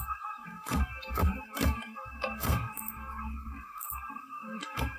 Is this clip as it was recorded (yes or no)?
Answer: no